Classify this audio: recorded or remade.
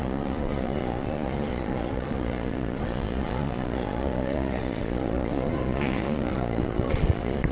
remade